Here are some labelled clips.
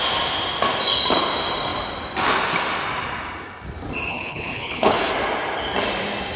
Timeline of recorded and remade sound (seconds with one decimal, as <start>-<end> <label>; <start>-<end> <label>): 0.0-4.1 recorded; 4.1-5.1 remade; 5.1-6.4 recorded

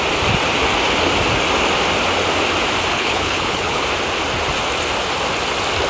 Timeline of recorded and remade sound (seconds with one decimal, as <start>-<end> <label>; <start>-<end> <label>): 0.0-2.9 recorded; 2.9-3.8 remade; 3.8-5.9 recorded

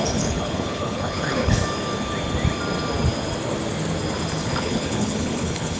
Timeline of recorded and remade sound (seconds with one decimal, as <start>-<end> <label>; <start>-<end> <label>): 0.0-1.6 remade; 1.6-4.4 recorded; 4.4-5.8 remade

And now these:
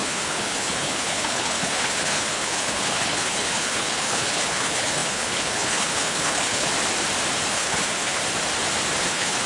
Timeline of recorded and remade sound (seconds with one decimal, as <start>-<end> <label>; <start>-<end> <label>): 0.0-6.7 remade; 6.7-7.5 recorded; 7.5-8.2 remade; 8.2-9.0 recorded; 9.0-9.5 remade

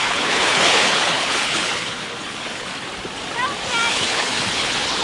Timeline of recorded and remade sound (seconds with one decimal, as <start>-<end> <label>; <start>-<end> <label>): 0.0-2.7 remade; 2.7-3.9 recorded; 3.9-5.0 remade

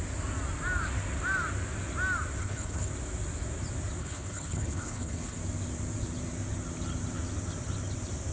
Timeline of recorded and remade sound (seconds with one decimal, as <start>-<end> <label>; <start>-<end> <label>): 0.0-2.4 recorded; 2.4-2.9 remade; 2.9-4.0 recorded; 4.0-5.4 remade; 5.4-8.3 recorded

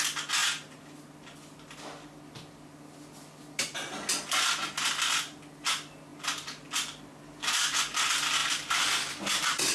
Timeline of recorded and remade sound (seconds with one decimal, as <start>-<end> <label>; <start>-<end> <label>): 0.0-9.7 recorded